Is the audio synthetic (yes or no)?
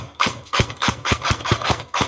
yes